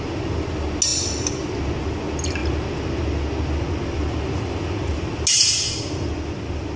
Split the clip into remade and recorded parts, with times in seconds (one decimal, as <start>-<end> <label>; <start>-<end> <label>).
0.0-6.8 recorded